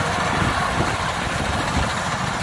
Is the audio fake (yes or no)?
no